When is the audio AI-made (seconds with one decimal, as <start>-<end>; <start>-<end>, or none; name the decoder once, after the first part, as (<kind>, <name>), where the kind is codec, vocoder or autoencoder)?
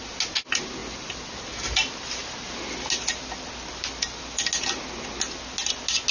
none